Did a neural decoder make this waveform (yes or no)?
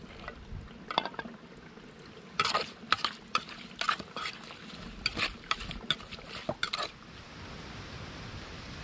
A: no